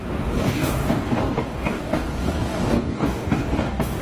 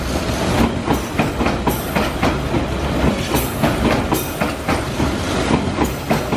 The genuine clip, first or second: second